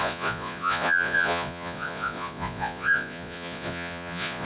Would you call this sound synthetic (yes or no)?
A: yes